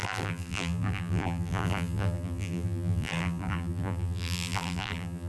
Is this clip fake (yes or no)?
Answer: yes